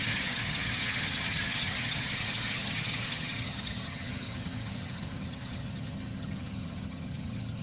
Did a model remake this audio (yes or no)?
yes